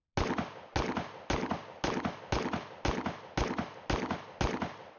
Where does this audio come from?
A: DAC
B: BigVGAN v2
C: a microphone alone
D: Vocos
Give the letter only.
C